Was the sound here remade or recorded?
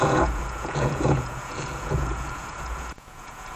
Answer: remade